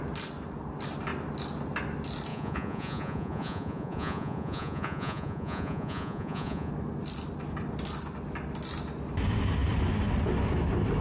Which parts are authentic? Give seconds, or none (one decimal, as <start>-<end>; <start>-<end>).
0.0-2.3; 6.7-11.0